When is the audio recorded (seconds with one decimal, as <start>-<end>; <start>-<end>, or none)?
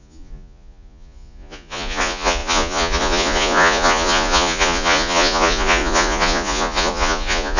none